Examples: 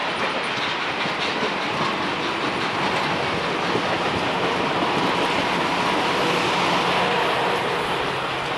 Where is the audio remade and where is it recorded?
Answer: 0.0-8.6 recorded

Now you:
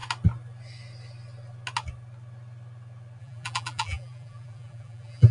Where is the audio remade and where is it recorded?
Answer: 0.0-3.2 recorded; 3.2-5.3 remade

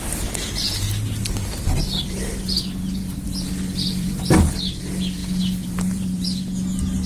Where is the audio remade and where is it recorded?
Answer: 0.0-3.9 recorded; 3.9-4.4 remade; 4.4-7.1 recorded

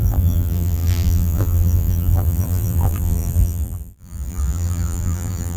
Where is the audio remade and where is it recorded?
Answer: 0.0-5.6 remade

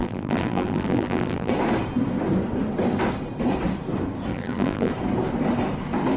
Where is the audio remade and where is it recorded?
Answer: 0.0-1.5 remade; 1.5-4.3 recorded; 4.3-4.9 remade; 4.9-6.2 recorded